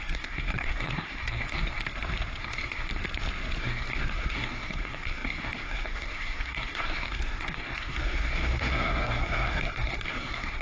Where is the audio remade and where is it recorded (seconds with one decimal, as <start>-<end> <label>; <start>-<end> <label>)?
0.0-1.8 remade; 1.8-2.4 recorded; 2.4-2.9 remade; 2.9-3.6 recorded; 3.6-10.6 remade